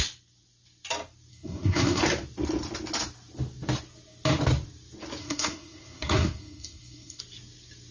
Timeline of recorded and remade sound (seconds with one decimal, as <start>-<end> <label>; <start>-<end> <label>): 0.0-1.3 recorded; 1.3-2.0 remade; 2.0-5.2 recorded; 5.2-7.2 remade; 7.2-7.9 recorded